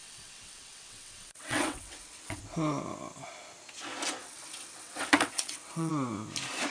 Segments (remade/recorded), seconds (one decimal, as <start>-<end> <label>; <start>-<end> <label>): 0.0-2.4 remade; 2.4-4.2 recorded; 4.2-5.9 remade; 5.9-6.7 recorded